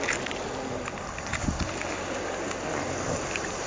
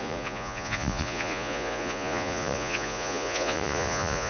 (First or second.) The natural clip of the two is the first